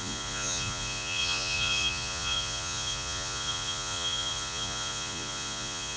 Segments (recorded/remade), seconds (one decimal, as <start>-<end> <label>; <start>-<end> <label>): 0.0-6.0 remade